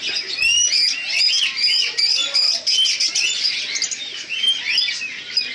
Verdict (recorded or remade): recorded